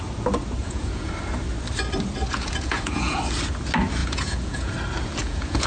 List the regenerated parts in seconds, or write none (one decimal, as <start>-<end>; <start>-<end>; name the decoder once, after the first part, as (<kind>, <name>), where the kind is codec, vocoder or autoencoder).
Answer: 0.6-1.1 (vocoder, Vocos); 2.3-3.2; 4.0-4.7; 5.2-5.7